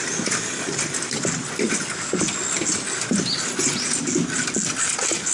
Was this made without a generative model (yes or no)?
yes